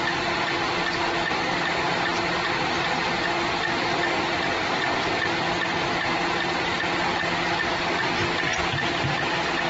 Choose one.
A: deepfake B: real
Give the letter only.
B